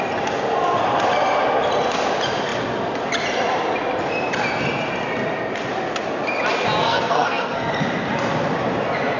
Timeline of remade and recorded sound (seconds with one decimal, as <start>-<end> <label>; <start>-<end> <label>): 0.0-6.8 recorded; 6.8-7.7 remade; 7.7-9.2 recorded